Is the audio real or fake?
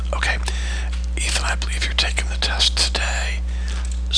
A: real